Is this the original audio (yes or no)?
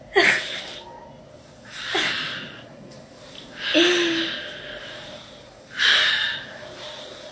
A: yes